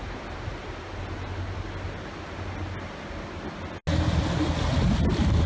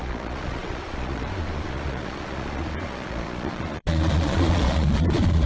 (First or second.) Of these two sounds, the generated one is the second